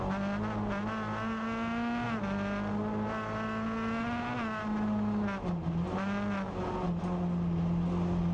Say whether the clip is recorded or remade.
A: recorded